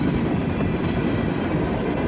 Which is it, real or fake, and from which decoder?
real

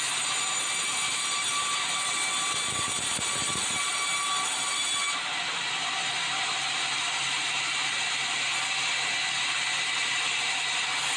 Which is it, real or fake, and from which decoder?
real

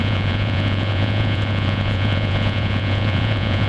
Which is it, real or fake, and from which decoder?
fake, vocoder, Vocos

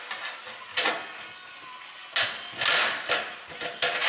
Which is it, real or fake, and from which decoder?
real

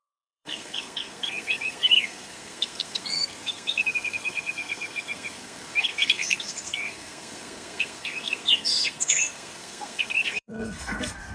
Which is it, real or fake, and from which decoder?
fake, codec, SNAC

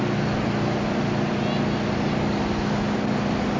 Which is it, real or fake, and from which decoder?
real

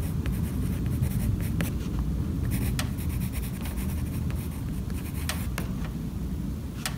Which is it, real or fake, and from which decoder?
real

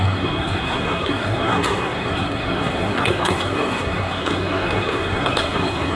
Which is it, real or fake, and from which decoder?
fake, codec, SNAC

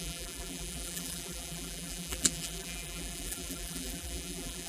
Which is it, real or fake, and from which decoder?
fake, vocoder, BigVGAN v2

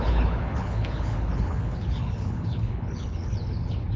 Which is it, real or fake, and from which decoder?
fake, codec, HILCodec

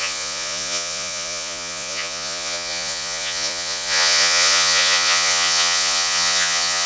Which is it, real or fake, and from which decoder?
fake, vocoder, Vocos